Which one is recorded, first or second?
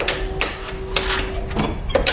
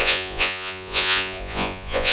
first